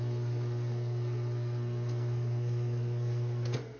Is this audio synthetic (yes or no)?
yes